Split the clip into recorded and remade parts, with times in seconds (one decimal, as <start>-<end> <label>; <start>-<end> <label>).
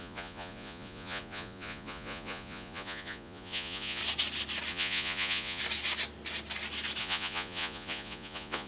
0.0-4.0 remade; 4.0-4.7 recorded; 4.7-5.6 remade; 5.6-7.0 recorded; 7.0-8.7 remade